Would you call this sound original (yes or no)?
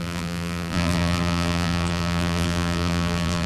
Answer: no